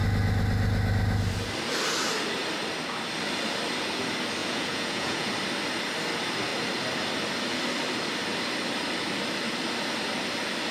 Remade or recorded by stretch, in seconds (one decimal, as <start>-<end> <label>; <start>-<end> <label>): 0.0-4.4 recorded; 4.4-5.3 remade; 5.3-10.7 recorded